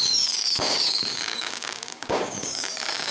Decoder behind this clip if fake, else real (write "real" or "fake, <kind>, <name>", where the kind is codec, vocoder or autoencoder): fake, codec, DAC